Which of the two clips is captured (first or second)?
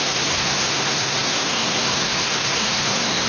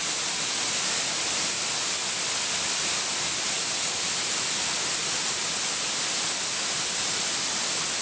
second